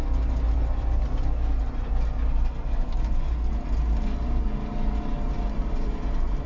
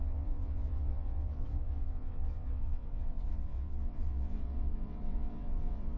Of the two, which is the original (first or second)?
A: first